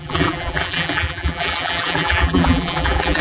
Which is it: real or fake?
fake